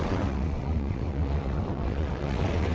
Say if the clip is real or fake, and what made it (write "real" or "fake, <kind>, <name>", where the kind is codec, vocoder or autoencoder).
fake, vocoder, WaveNeXt